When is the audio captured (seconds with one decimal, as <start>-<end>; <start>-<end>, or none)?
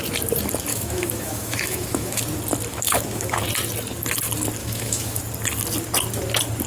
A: 0.0-0.7; 2.2-2.7; 3.4-4.6; 5.2-6.7